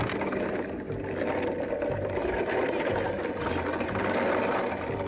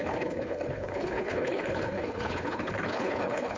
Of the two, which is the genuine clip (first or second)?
first